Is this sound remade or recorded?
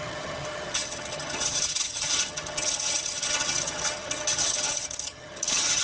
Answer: remade